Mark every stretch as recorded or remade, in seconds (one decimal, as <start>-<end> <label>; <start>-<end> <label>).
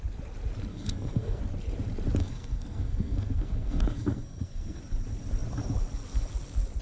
0.0-0.7 recorded; 0.7-1.4 remade; 1.4-2.2 recorded; 2.2-4.8 remade; 4.8-6.8 recorded